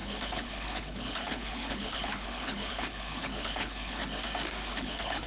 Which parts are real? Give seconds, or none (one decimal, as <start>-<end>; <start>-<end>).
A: 4.0-4.7